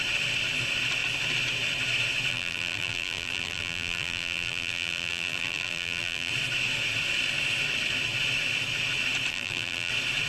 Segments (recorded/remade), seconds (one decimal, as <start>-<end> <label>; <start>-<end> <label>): 0.0-2.3 recorded; 2.3-6.3 remade; 6.3-9.3 recorded; 9.3-9.9 remade; 9.9-10.3 recorded